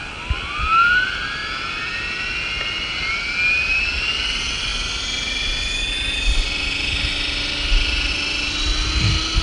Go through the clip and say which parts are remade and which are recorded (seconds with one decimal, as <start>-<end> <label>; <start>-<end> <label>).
0.0-9.4 recorded